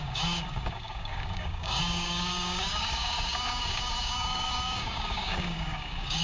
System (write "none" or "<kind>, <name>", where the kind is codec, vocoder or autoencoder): codec, DAC